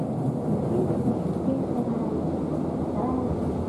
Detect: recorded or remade recorded